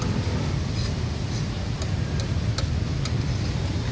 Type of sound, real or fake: real